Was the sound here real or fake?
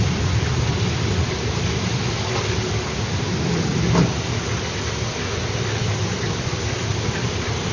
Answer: fake